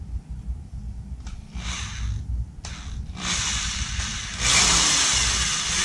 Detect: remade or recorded recorded